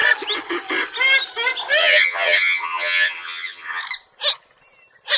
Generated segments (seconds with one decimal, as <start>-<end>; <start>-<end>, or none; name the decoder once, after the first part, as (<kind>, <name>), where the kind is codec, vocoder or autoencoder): 1.8-3.8 (vocoder, HiFi-GAN)

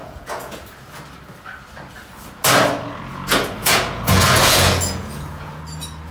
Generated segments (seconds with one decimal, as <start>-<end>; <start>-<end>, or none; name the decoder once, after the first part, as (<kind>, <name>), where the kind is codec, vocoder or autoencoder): 0.0-0.5 (vocoder, Vocos); 3.6-5.6

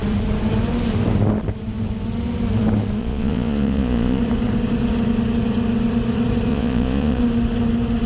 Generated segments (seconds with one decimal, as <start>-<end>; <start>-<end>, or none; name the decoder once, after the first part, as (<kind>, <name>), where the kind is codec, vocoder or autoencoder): 3.0-4.2 (vocoder, Vocos); 6.5-7.2

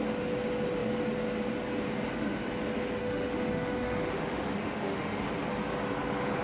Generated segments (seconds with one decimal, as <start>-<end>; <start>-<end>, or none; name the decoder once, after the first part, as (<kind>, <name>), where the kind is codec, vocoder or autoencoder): 3.0-5.3 (autoencoder, DAC-VAE)

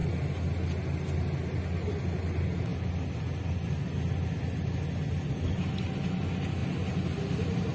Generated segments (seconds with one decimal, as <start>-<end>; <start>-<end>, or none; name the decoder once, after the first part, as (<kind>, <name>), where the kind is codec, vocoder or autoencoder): none

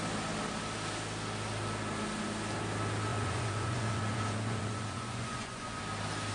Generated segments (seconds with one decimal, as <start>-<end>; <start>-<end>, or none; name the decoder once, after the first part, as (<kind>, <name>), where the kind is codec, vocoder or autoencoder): 3.1-5.8 (vocoder, Vocos)